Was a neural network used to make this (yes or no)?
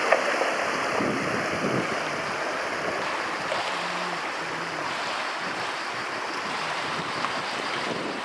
no